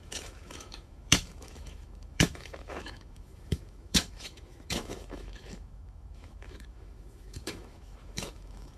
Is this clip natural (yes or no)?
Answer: no